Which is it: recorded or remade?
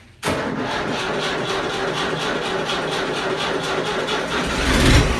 recorded